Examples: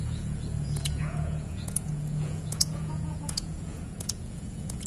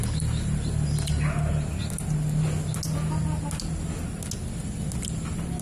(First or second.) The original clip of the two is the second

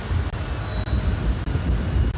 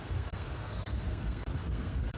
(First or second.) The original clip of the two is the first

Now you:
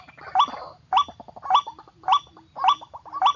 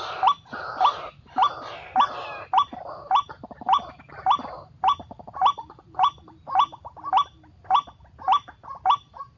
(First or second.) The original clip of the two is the first